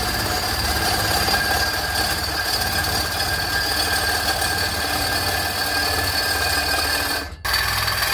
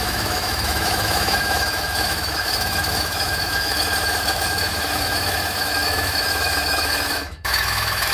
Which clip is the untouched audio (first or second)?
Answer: first